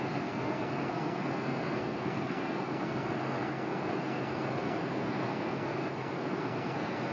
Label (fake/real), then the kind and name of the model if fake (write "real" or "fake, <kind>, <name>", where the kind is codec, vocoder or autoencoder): fake, codec, SNAC